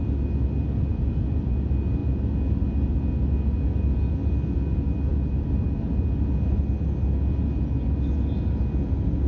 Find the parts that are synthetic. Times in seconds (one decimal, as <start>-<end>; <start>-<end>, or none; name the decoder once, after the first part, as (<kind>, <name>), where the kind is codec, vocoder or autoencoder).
0.9-1.5 (vocoder, BigVGAN v2); 5.1-5.9